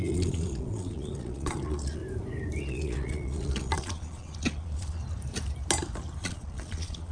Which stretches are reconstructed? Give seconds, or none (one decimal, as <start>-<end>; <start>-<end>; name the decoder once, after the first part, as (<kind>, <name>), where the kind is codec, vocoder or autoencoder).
0.0-2.0 (vocoder, Vocos); 2.6-5.0; 6.2-7.1